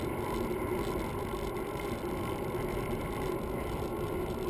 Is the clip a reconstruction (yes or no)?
no